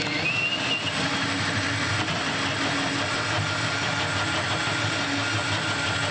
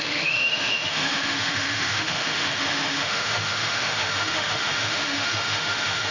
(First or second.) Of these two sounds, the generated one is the second